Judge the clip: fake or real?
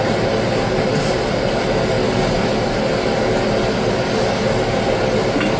real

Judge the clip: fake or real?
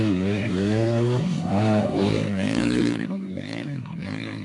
fake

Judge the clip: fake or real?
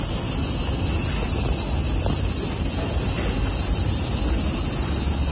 real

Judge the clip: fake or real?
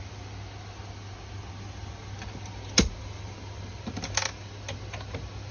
real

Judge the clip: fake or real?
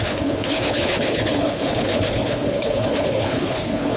fake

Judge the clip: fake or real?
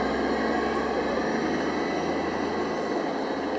real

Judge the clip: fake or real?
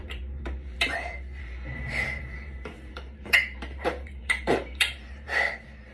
fake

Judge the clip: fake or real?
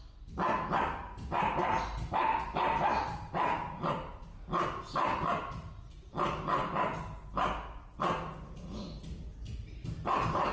real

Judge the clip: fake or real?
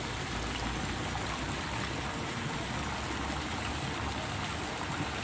real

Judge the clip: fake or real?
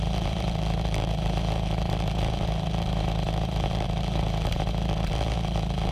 fake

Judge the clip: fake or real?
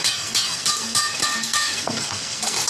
fake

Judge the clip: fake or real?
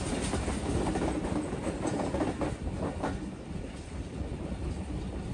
real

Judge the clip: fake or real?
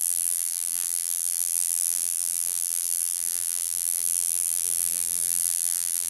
fake